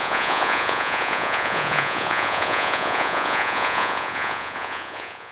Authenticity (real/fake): fake